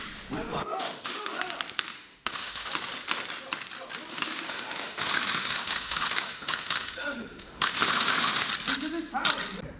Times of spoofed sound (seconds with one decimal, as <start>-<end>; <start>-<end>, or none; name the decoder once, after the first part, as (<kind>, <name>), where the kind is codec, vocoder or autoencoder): 0.5-1.4 (autoencoder, DAC-VAE); 1.9-2.7; 4.1-8.5